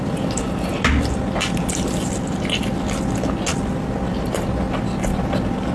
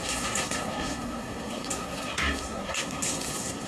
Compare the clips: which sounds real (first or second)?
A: first